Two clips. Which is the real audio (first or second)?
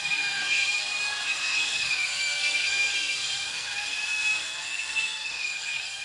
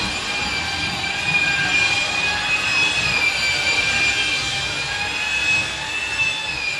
second